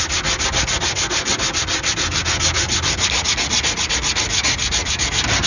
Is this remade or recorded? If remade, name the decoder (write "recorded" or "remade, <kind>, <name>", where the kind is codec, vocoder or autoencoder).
recorded